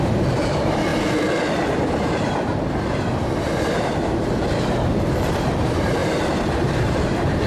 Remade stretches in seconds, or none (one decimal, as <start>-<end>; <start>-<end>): 0.0-0.9; 3.6-7.5